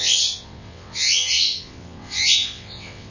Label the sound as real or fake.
fake